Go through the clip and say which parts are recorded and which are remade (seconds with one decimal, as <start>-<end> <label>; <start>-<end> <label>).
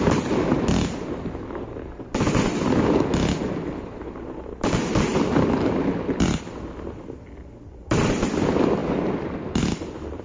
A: 0.0-10.2 recorded